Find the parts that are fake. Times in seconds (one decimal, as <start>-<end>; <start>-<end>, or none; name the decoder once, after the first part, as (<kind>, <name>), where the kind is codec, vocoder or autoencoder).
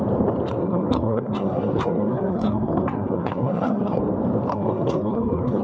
0.6-4.0 (codec, SNAC); 4.5-5.6